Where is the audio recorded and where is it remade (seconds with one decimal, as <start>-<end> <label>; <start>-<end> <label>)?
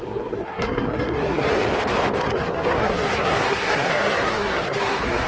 0.0-1.5 remade; 1.5-2.2 recorded; 2.2-5.3 remade